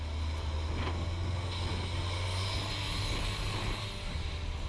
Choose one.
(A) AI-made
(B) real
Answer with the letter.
B